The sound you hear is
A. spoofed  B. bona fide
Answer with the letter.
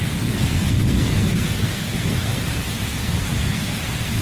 A